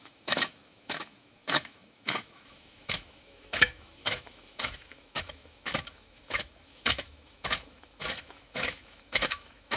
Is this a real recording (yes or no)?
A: no